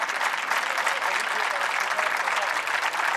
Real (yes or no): yes